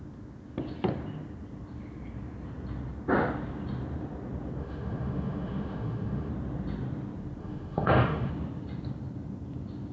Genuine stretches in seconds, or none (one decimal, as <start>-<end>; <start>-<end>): 0.0-4.6; 6.3-7.4; 8.3-9.9